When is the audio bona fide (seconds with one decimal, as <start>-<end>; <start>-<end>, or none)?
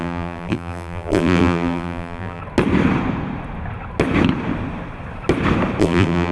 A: 2.4-5.8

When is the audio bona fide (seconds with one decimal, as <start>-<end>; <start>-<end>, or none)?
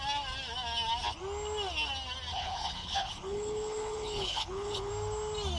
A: 0.0-2.3; 4.9-5.6